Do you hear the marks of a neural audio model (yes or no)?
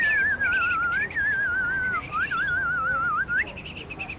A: no